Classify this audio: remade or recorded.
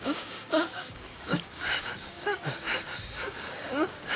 remade